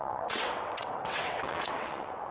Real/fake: fake